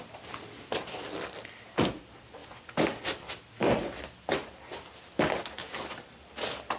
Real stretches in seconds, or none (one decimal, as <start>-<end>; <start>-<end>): 0.0-6.8